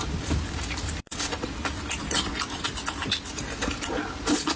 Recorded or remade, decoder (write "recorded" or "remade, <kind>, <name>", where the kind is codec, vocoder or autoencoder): recorded